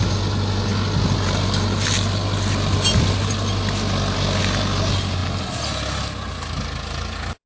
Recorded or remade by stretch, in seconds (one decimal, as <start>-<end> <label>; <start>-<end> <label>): 0.0-7.5 recorded